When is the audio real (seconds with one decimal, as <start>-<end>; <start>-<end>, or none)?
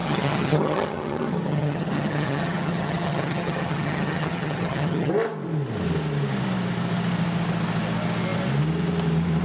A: 5.1-9.4